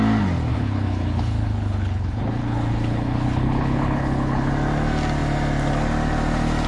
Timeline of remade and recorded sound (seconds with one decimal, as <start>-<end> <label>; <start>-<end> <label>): 0.0-0.5 recorded; 0.5-4.5 remade; 4.5-6.7 recorded